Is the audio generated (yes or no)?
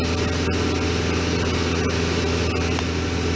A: no